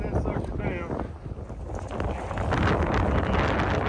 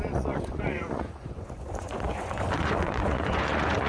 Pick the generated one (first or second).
second